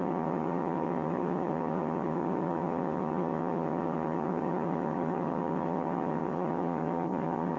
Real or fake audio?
fake